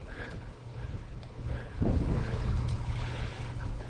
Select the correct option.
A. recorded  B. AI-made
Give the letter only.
B